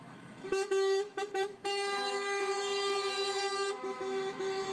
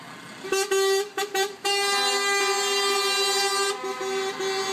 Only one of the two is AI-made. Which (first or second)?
first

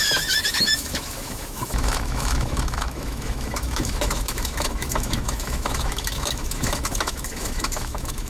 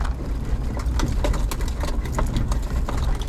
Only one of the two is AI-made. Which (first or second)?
first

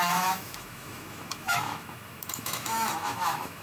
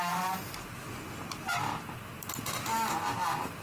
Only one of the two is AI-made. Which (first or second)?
first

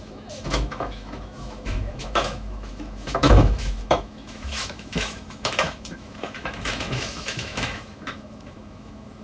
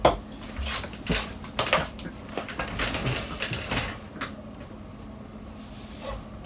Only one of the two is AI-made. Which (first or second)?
first